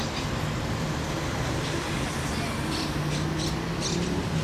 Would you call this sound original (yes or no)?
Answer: yes